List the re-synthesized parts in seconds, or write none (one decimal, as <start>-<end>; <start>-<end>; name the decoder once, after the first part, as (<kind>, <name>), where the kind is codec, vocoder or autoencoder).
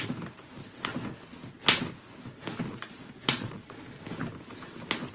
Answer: 2.7-3.8 (vocoder, Vocos)